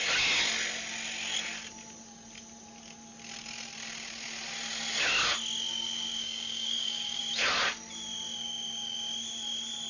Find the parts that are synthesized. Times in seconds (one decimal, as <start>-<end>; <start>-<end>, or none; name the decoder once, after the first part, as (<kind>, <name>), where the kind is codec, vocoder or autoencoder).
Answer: 6.2-7.2 (codec, DAC)

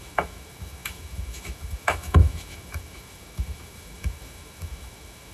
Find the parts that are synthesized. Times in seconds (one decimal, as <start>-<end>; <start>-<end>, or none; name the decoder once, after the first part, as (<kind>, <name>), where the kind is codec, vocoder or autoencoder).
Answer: 0.0-5.3 (autoencoder, DAC-VAE)